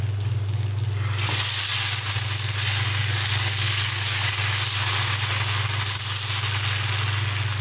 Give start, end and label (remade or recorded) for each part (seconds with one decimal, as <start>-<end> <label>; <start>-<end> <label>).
0.0-3.0 recorded; 3.0-4.3 remade; 4.3-7.6 recorded